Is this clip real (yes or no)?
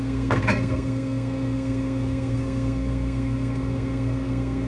no